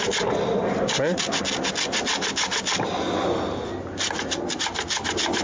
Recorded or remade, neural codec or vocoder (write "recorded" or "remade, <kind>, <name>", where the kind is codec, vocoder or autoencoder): recorded